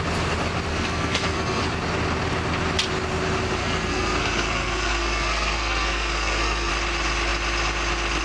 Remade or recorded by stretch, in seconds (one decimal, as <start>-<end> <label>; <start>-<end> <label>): 0.0-0.7 recorded; 0.7-1.6 remade; 1.6-3.6 recorded; 3.6-6.7 remade; 6.7-8.2 recorded